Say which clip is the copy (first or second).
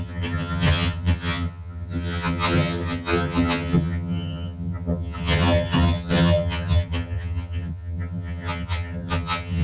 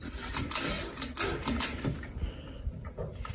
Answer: first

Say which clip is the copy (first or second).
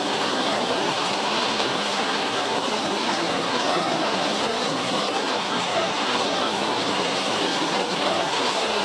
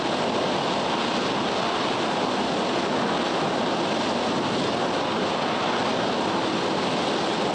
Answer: first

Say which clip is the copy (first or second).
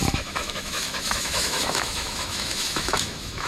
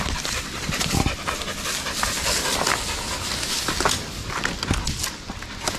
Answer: first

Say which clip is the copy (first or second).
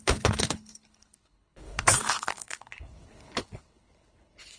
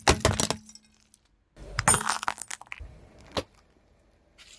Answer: first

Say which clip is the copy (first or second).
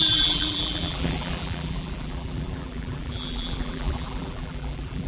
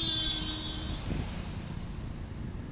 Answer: first